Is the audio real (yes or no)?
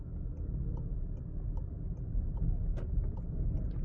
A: yes